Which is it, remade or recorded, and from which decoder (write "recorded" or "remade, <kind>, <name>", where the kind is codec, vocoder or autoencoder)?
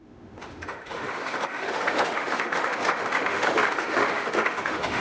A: remade, autoencoder, DAC-VAE